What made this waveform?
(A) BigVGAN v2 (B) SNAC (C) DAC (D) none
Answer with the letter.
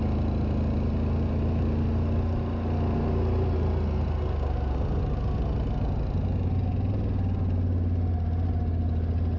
D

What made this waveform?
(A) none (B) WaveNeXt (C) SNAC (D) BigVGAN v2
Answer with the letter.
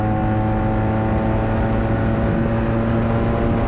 A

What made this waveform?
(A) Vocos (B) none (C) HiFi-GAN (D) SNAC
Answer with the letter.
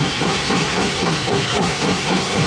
D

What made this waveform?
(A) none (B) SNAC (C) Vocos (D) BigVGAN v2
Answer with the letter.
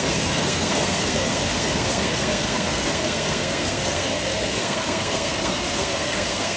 B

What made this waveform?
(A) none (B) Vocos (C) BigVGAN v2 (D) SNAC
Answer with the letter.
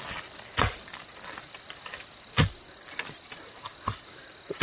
A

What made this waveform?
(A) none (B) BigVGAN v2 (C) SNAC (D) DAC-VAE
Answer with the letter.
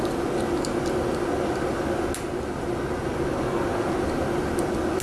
A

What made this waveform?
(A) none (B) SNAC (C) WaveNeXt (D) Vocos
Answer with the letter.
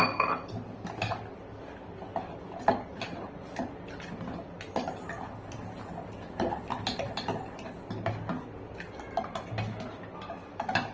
A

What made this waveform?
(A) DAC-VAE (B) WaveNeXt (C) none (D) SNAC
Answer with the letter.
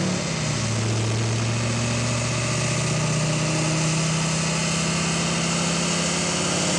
C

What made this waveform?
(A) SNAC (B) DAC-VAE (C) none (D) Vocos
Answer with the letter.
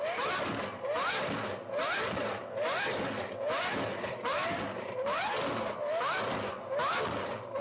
C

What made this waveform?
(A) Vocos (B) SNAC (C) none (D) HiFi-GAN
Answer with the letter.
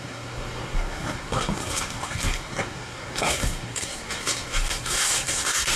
B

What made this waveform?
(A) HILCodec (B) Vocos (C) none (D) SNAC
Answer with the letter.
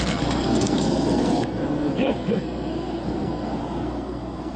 D